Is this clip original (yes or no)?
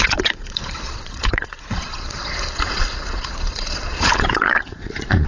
no